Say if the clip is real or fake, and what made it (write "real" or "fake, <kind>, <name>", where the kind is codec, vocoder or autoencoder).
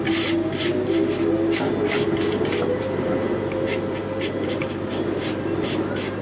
real